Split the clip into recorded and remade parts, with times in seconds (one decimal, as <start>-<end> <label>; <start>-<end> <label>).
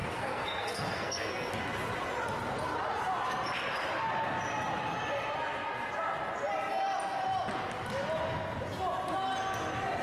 0.0-1.5 remade; 1.5-10.0 recorded